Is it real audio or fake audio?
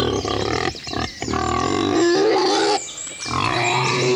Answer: real